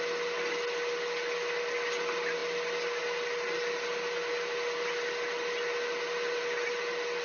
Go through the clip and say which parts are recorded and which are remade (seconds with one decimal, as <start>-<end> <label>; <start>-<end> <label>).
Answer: 0.0-7.2 recorded